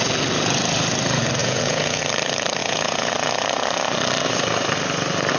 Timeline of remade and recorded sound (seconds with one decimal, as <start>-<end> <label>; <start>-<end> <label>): 0.0-1.4 recorded; 1.4-2.0 remade; 2.0-2.6 recorded; 2.6-3.1 remade; 3.1-5.4 recorded